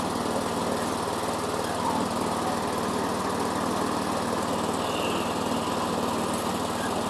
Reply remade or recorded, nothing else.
recorded